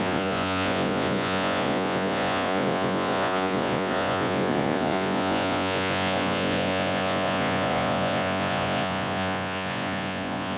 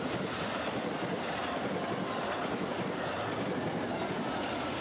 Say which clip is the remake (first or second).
first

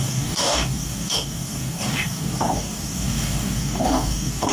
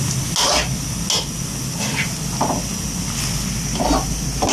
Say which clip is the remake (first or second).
first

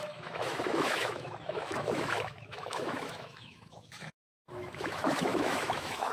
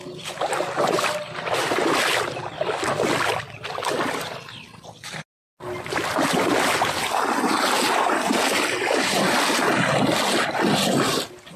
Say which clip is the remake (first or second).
first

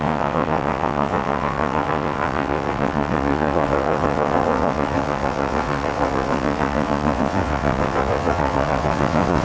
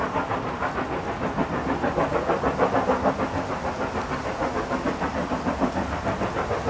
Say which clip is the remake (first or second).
first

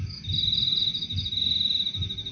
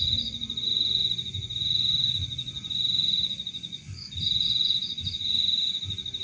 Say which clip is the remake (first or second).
second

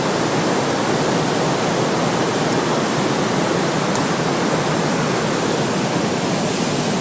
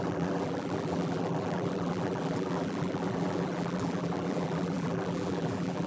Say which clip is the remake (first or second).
second